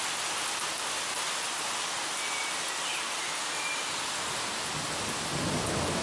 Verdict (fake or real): real